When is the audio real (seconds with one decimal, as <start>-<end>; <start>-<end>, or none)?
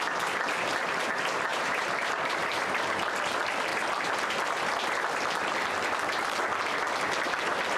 0.0-1.5; 2.5-7.8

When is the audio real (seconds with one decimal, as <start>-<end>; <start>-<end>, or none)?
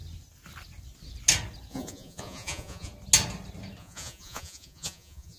0.0-1.7; 2.9-3.8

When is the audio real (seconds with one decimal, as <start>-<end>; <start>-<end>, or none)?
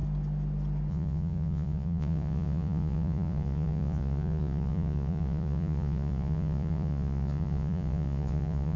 0.0-0.9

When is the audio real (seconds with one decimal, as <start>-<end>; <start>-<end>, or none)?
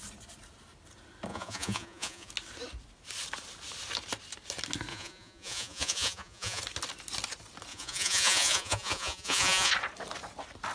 0.0-1.3; 2.3-4.9; 6.6-7.7; 9.7-10.7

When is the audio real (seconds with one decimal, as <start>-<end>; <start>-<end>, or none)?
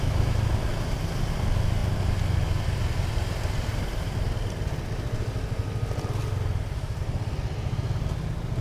0.0-8.6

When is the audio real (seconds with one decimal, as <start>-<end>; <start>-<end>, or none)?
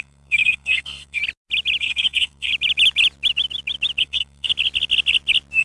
1.2-1.8; 2.5-4.0; 4.5-5.6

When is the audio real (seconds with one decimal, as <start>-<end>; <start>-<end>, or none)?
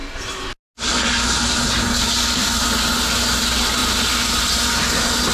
0.0-5.3